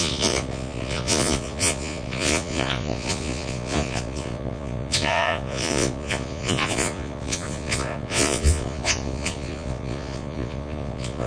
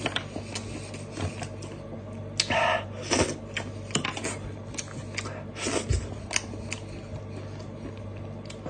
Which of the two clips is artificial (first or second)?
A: first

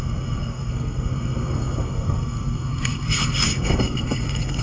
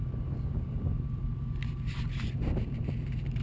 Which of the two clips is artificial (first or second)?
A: first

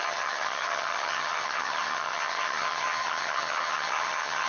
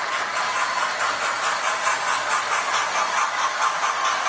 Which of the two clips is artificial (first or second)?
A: first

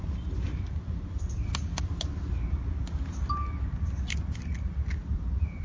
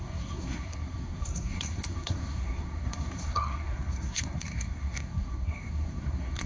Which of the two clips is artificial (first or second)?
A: second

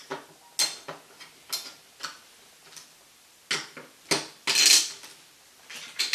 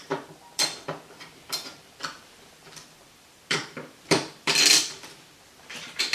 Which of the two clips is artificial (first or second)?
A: second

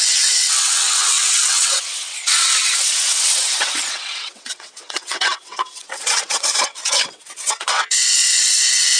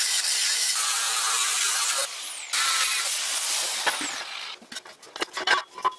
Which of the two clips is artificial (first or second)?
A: first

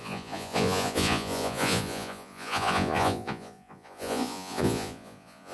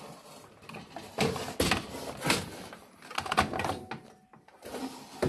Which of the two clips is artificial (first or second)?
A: first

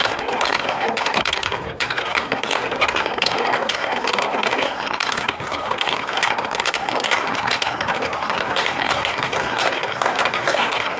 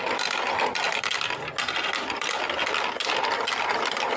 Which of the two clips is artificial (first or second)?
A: first